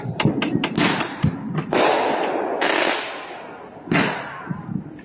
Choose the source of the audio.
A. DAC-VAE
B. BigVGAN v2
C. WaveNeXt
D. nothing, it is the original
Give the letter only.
D